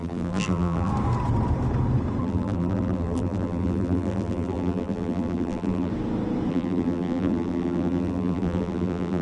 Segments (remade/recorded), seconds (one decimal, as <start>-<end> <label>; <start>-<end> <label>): 0.0-0.9 remade; 0.9-2.2 recorded; 2.2-5.9 remade; 5.9-6.5 recorded; 6.5-9.2 remade